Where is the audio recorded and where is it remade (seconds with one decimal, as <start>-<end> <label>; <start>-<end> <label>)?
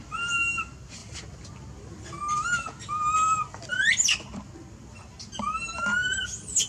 0.0-6.7 recorded